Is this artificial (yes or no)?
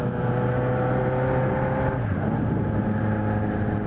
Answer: no